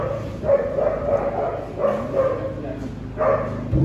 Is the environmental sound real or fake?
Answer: real